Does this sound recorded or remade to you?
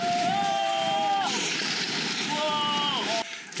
remade